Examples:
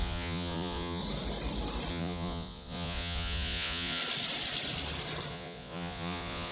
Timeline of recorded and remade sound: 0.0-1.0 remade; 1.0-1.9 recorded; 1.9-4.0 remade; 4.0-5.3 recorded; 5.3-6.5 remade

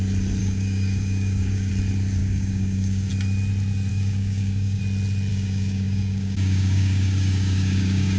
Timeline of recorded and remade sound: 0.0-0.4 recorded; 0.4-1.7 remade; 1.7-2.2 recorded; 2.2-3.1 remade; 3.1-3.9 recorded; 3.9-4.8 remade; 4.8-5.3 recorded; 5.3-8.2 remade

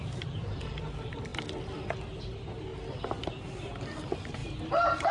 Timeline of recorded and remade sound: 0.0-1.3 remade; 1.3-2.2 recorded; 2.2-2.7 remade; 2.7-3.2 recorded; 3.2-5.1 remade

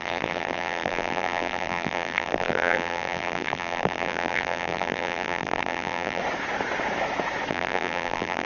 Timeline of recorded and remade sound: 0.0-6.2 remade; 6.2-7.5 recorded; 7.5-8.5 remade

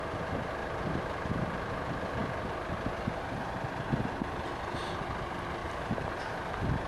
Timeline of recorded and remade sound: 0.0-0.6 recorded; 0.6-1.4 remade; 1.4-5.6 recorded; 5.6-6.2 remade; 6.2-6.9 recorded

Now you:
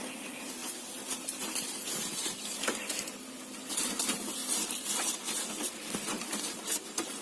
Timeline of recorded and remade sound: 0.0-0.6 recorded; 0.6-3.7 remade; 3.7-4.4 recorded; 4.4-5.1 remade; 5.1-7.2 recorded

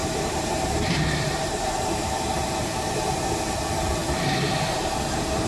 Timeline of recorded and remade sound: 0.0-3.3 remade; 3.3-4.0 recorded; 4.0-5.5 remade